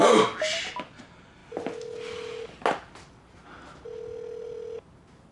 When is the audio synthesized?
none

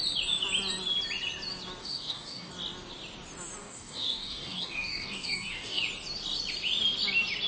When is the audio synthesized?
1.8-2.5 (codec, DAC); 3.6-5.8

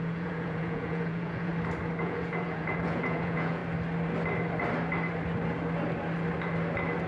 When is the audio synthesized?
0.0-1.5 (vocoder, Vocos); 2.0-3.6

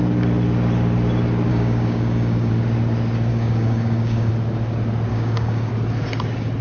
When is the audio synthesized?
1.5-2.5 (codec, DAC); 3.3-4.3; 5.1-5.7

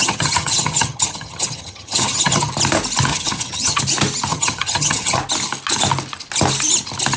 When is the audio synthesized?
0.0-2.5 (vocoder, HiFi-GAN); 3.1-3.8; 4.3-5.2